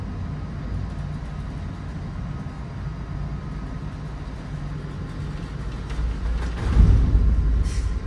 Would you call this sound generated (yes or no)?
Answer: no